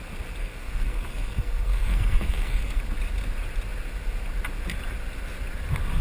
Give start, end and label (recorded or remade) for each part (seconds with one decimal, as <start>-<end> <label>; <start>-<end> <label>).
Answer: 0.0-0.4 recorded; 0.4-2.8 remade; 2.8-6.0 recorded